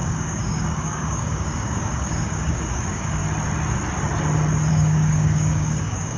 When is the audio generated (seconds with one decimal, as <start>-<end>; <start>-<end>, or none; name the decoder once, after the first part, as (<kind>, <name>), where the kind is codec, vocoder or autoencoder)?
0.0-3.2 (codec, DAC); 4.7-6.2